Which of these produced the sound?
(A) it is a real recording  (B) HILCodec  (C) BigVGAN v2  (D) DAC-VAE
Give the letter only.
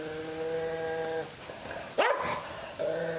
A